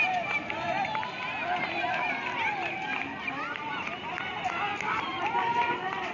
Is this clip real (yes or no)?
no